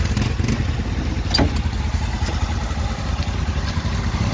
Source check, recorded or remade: recorded